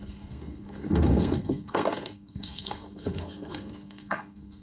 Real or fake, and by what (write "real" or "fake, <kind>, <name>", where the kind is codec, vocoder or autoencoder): fake, codec, SNAC